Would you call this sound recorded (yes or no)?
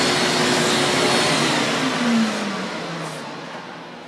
yes